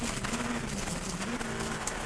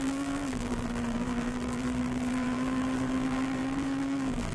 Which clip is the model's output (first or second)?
second